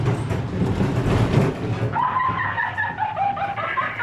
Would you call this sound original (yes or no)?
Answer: yes